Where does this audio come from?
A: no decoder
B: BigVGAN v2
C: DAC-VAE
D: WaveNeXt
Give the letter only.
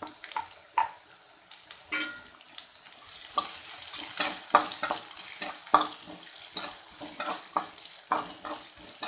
A